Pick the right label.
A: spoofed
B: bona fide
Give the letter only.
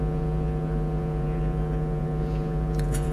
A